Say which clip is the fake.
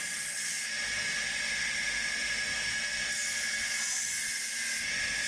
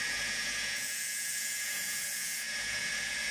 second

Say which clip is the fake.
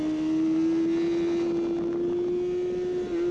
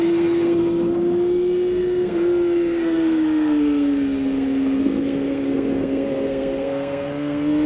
second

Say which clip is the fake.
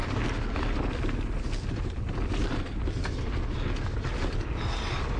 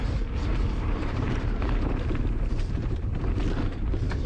second